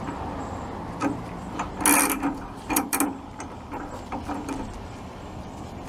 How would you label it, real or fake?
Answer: real